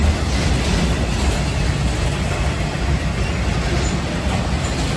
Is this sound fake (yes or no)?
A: no